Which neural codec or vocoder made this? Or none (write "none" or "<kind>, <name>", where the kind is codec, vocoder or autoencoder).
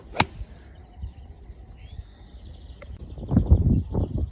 none